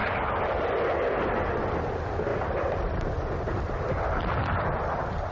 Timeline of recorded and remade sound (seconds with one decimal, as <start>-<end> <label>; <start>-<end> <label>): 0.0-2.3 recorded; 2.3-5.3 remade